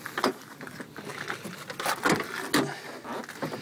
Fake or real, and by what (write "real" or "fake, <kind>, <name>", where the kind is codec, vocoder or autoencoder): real